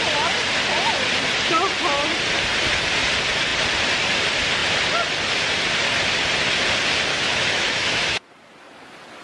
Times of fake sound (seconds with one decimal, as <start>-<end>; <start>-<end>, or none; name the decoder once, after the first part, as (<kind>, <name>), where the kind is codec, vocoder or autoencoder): 7.1-8.2 (autoencoder, DAC-VAE)